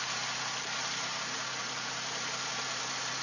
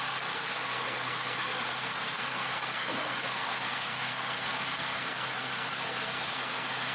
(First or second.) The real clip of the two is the first